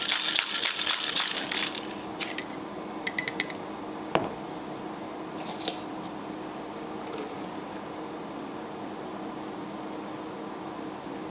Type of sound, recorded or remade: recorded